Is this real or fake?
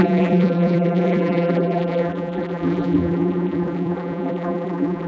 fake